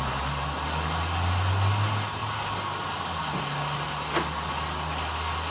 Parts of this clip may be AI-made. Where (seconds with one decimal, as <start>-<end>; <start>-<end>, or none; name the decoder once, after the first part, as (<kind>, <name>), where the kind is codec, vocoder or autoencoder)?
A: none